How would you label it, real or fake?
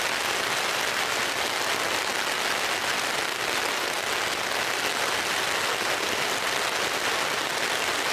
real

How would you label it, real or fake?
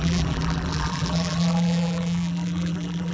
fake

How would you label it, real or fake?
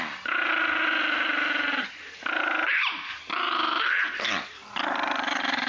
real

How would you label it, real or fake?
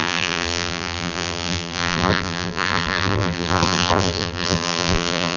fake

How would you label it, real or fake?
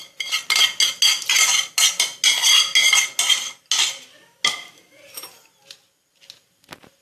real